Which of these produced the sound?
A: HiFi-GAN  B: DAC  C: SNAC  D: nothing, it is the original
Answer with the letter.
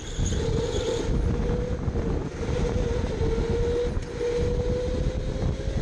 D